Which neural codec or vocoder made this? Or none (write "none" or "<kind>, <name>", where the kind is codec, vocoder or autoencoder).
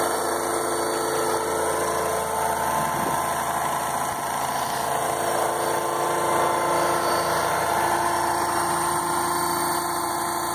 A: none